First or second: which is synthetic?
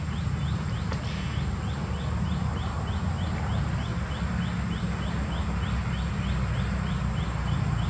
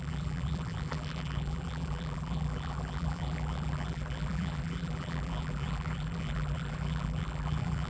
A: second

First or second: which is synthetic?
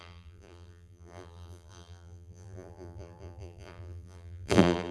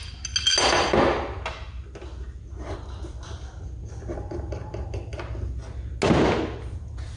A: first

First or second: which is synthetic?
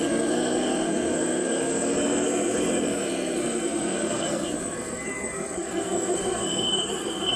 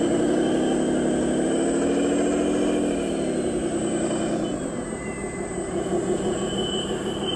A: first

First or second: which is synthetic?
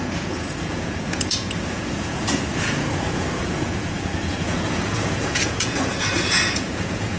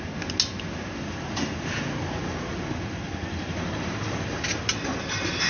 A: first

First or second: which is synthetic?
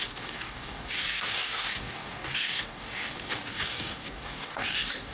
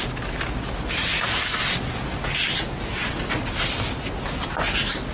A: first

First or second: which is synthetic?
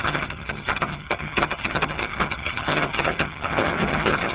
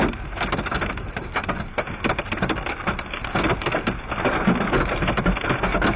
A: first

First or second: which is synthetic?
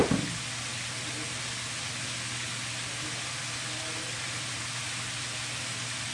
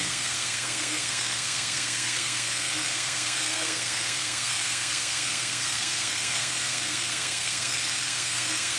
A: second